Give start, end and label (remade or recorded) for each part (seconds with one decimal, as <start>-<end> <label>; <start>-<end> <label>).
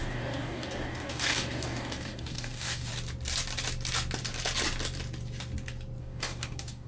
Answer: 0.0-2.9 remade; 2.9-6.0 recorded; 6.0-6.9 remade